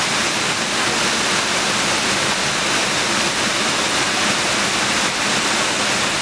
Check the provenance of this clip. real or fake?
real